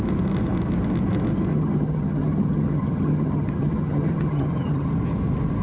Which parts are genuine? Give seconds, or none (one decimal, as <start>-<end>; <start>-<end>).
0.0-1.5; 4.9-5.6